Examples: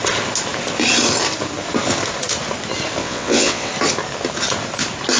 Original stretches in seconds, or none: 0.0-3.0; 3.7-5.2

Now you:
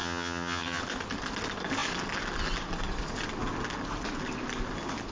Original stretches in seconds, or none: 0.8-5.1

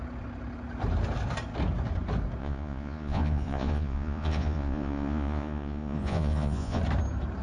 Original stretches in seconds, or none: 0.0-2.4; 6.8-7.4

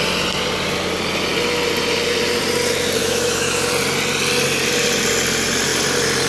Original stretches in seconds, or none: 0.0-3.0; 3.7-6.3

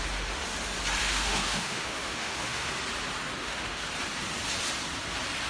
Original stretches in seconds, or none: 0.0-1.0; 2.7-3.4; 3.9-5.5